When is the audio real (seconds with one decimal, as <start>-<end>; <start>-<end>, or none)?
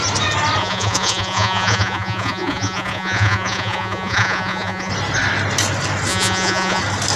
0.0-0.6; 4.9-6.1; 6.8-7.2